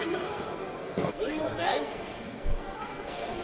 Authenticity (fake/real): fake